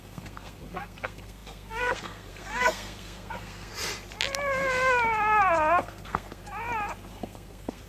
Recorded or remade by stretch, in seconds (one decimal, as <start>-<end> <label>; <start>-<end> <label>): 0.0-3.7 remade; 3.7-5.8 recorded; 5.8-6.4 remade; 6.4-7.1 recorded; 7.1-7.9 remade